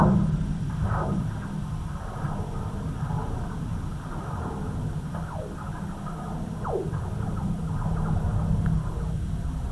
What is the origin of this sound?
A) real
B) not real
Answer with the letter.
A